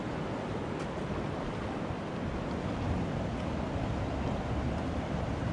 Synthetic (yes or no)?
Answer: no